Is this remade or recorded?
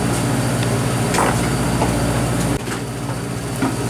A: recorded